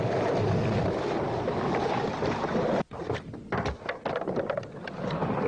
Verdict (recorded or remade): recorded